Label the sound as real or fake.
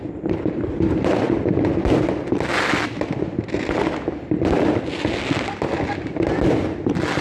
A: real